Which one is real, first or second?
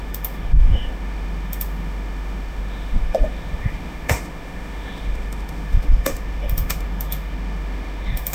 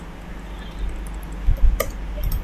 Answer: second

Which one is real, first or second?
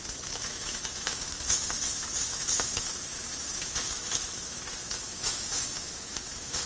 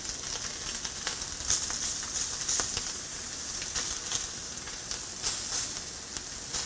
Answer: second